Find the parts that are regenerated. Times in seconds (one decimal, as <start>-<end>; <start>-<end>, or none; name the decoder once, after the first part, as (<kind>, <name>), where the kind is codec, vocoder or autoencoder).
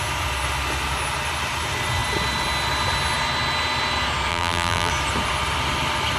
4.3-4.9 (vocoder, BigVGAN v2)